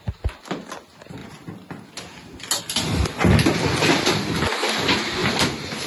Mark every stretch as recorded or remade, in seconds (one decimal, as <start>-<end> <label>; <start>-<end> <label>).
0.0-5.2 recorded; 5.2-5.9 remade